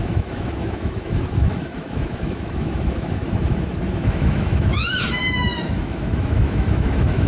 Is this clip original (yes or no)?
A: no